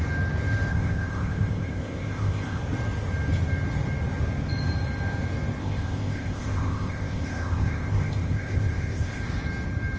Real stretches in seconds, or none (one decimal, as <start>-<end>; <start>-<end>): 0.0-0.7; 2.6-5.6; 9.2-10.0